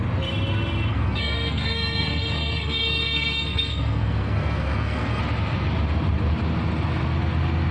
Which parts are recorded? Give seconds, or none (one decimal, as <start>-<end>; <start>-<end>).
0.0-0.9; 5.2-7.7